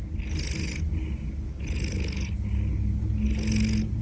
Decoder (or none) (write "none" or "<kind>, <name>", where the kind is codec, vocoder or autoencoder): none